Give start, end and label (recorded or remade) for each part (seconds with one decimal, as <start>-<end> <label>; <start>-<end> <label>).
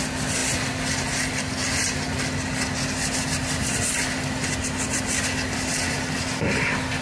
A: 0.0-7.0 recorded